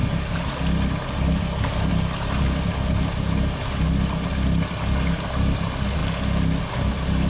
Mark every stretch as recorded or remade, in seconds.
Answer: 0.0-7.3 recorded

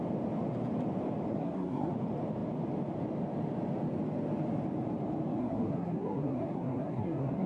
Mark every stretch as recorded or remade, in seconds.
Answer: 0.0-1.3 recorded; 1.3-1.9 remade; 1.9-5.4 recorded; 5.4-7.5 remade

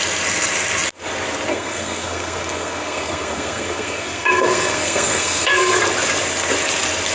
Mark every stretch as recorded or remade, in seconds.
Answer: 0.0-1.5 recorded; 1.5-5.8 remade; 5.8-7.1 recorded

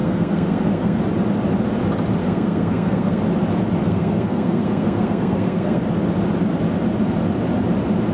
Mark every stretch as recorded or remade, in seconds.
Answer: 0.0-1.0 remade; 1.0-2.2 recorded; 2.2-3.2 remade; 3.2-3.8 recorded; 3.8-5.8 remade; 5.8-8.1 recorded

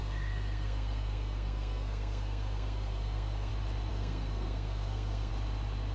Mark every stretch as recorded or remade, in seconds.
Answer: 0.0-3.5 remade; 3.5-3.9 recorded; 3.9-5.3 remade; 5.3-5.9 recorded

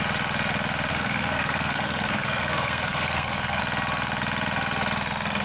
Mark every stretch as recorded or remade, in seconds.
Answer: 0.0-0.9 recorded; 0.9-3.6 remade; 3.6-5.4 recorded

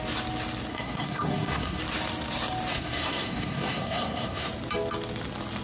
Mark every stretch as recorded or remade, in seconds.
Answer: 0.0-0.7 recorded; 0.7-1.8 remade; 1.8-2.7 recorded; 2.7-4.5 remade; 4.5-5.6 recorded